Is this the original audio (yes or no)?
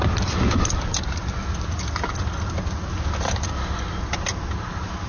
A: yes